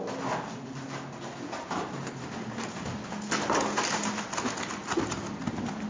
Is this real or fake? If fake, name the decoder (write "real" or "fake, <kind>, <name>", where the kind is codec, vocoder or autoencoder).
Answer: real